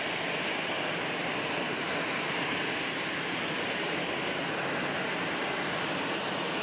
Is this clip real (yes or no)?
yes